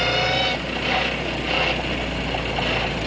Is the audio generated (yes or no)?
no